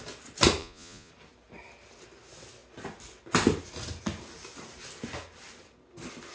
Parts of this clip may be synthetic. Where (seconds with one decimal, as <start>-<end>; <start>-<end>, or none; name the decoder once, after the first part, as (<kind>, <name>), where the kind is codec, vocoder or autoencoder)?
0.6-1.1 (vocoder, Vocos)